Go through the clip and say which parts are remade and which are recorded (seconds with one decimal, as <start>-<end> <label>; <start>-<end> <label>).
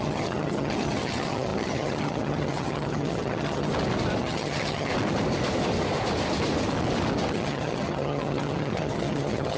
0.0-3.7 remade; 3.7-4.2 recorded; 4.2-4.9 remade; 4.9-7.3 recorded; 7.3-9.6 remade